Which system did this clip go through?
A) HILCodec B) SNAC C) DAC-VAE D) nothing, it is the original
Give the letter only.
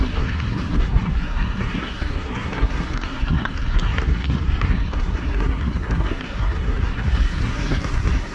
B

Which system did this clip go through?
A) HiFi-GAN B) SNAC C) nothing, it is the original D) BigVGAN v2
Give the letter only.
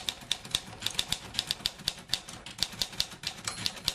C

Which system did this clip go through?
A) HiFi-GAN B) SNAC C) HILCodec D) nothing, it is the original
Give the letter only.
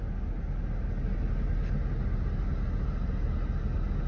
D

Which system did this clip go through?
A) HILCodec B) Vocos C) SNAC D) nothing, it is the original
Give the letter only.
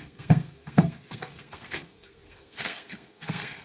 C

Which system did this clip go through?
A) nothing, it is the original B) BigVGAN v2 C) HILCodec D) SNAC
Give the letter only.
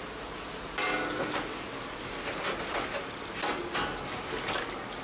A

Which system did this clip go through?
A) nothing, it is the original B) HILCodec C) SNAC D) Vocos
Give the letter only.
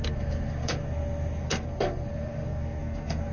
C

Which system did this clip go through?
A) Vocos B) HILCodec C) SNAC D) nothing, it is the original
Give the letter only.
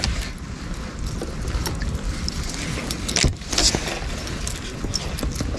D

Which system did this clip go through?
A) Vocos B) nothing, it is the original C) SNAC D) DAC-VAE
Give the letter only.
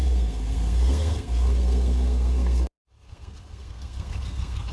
C